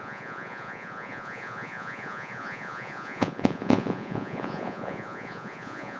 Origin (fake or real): fake